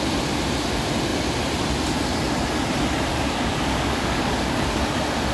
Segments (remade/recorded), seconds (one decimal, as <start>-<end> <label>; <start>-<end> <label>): 0.0-3.1 recorded; 3.1-4.8 remade; 4.8-5.3 recorded